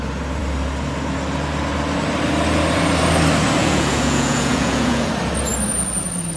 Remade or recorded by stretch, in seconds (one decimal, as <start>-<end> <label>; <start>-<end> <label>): 0.0-3.6 recorded; 3.6-5.1 remade; 5.1-6.4 recorded